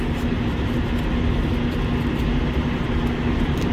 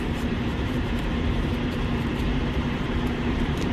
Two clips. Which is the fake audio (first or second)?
second